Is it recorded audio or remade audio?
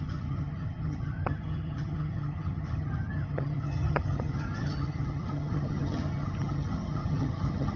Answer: remade